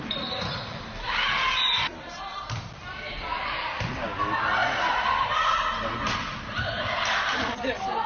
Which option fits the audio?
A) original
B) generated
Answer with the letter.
A